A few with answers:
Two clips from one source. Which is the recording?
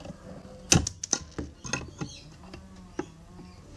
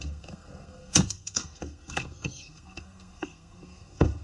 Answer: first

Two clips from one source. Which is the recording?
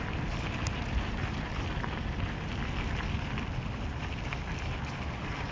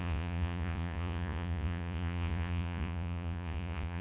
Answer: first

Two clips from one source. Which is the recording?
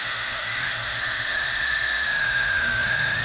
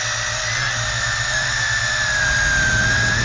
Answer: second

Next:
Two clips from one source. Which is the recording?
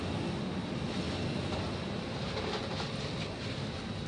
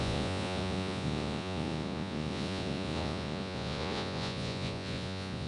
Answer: first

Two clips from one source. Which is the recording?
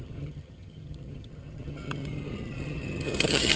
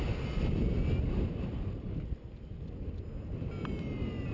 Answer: second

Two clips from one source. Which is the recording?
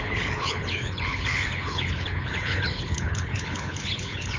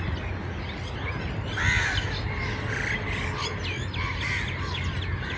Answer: second